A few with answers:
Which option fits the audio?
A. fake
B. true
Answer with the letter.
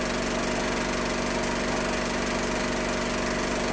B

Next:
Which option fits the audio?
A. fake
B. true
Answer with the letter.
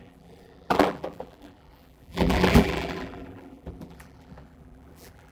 A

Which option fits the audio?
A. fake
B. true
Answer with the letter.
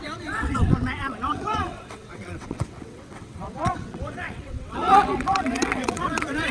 A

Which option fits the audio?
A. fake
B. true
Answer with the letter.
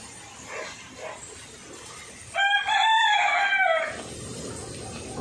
B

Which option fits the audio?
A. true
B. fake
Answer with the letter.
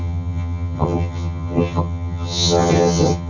B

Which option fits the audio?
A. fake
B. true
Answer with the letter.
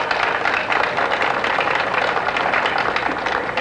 B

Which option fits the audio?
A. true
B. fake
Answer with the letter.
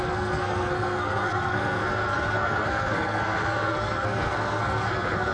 B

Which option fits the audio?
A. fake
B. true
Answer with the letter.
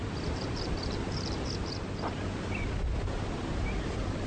B